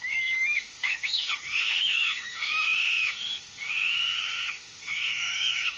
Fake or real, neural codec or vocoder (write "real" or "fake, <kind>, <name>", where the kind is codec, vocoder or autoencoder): fake, autoencoder, DAC-VAE